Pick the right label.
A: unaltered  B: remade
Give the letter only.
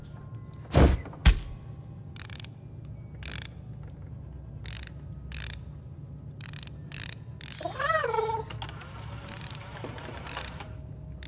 A